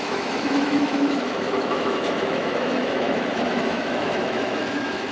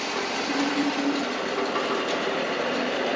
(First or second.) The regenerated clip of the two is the first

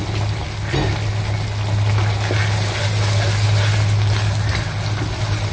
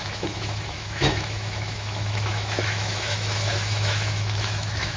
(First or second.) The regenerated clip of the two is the second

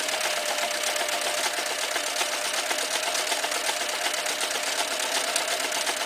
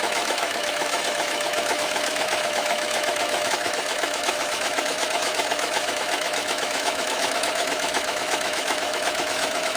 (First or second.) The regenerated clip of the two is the second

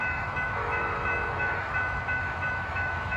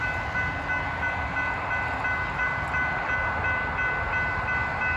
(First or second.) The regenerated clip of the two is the first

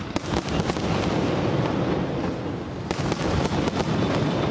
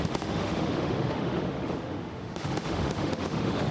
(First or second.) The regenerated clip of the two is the second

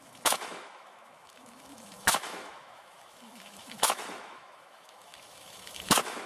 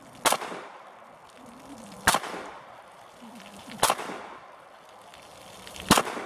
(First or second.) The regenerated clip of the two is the first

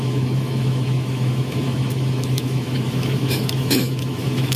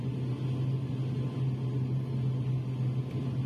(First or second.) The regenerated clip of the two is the first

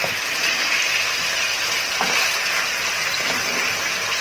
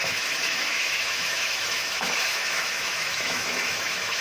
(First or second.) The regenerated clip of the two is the second